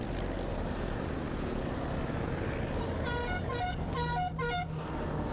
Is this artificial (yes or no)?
no